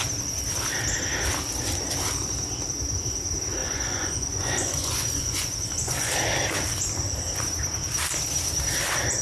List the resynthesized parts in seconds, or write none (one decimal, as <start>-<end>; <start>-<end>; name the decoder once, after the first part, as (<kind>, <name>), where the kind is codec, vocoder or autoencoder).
3.6-6.1 (vocoder, Vocos)

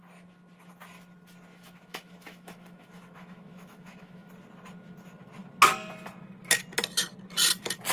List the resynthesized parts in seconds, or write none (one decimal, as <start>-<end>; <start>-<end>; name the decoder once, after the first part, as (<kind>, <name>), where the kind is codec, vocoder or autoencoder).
1.5-4.3 (autoencoder, DAC-VAE)

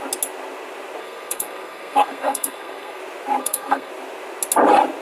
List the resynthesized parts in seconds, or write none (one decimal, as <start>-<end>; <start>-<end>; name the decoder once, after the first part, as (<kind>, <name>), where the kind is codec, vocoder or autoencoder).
1.0-3.0 (codec, SNAC); 3.4-3.9

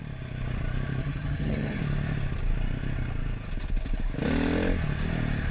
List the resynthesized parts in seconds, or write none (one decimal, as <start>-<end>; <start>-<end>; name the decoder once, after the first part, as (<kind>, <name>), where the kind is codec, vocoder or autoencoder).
1.0-1.8 (vocoder, HiFi-GAN)

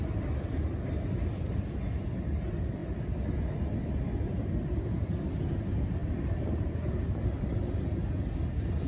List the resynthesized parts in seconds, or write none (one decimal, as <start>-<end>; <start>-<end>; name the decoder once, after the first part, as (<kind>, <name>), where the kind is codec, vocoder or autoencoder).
none

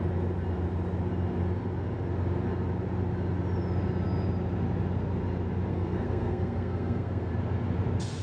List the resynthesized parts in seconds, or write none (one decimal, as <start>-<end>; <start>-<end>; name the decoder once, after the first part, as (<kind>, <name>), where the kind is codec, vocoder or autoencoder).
5.7-7.3 (codec, SNAC)